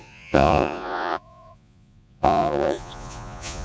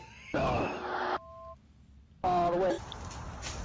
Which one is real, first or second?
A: second